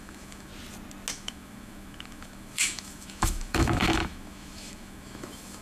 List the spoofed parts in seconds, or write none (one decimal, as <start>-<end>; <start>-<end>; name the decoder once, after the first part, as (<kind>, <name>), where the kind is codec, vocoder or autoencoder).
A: 0.0-0.5 (autoencoder, DAC-VAE); 1.1-5.6